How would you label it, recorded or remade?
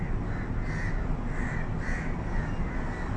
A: recorded